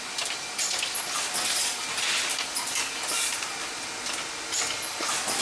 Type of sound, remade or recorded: recorded